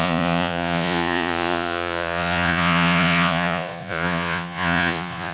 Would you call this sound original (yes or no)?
no